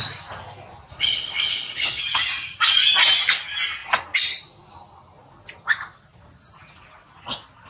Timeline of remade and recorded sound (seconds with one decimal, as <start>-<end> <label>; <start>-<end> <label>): 0.0-0.9 recorded; 0.9-2.0 remade; 2.0-7.7 recorded